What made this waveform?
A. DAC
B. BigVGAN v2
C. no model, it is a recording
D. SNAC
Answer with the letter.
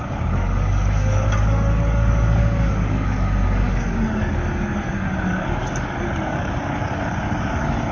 A